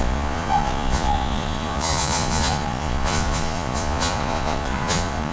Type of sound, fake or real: fake